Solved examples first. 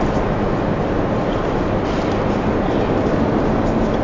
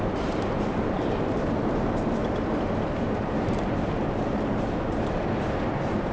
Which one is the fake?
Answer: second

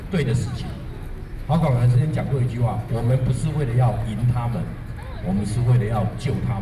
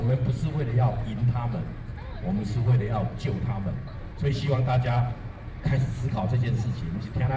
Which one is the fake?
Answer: second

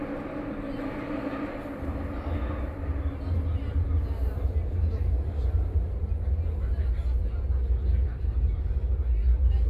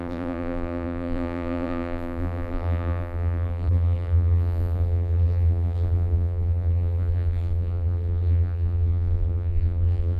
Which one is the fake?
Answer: second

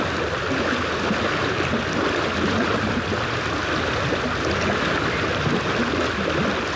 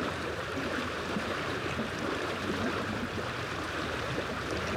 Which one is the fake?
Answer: second